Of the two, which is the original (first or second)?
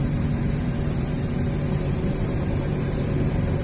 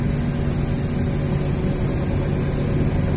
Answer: second